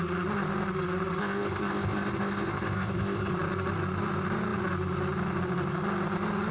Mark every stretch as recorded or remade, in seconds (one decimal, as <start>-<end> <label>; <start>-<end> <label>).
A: 0.0-1.2 recorded; 1.2-3.3 remade; 3.3-6.5 recorded